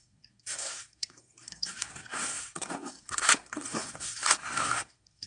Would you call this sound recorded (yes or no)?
no